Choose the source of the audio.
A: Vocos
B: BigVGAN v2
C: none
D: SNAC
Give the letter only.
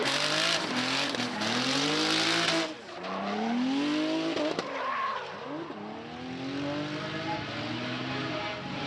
C